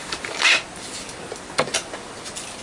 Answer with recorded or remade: recorded